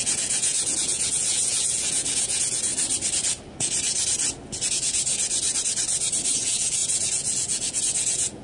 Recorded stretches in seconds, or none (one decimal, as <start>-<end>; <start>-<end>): 2.7-6.3